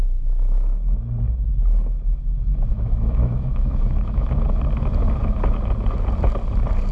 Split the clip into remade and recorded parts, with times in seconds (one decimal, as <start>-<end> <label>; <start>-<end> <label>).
0.0-2.7 recorded; 2.7-4.3 remade; 4.3-6.9 recorded